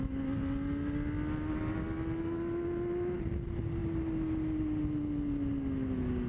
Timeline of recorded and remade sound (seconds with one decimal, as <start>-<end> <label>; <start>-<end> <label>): 0.0-6.3 recorded